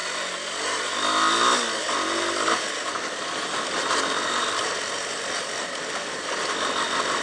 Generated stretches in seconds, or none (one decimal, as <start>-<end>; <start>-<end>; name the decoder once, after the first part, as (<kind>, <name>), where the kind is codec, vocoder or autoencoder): none